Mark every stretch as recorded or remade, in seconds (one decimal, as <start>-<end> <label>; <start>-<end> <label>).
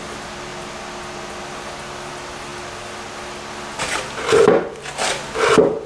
0.0-5.9 recorded